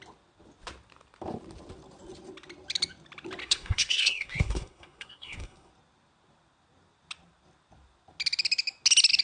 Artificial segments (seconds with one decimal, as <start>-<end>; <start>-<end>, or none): 3.4-5.7